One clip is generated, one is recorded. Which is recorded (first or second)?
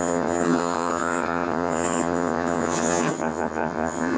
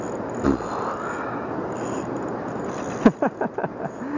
second